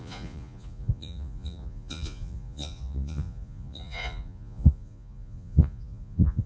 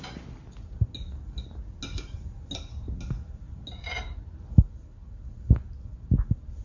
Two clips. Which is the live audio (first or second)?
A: second